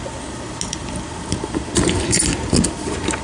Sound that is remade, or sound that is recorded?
recorded